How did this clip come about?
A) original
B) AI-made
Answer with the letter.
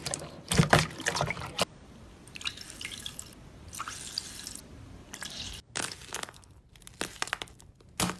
A